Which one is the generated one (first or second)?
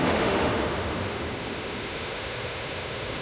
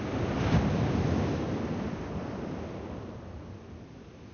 first